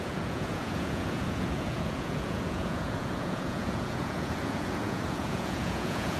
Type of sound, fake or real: fake